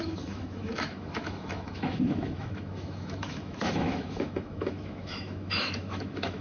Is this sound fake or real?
fake